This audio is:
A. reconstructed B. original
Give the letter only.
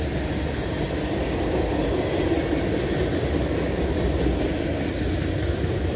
B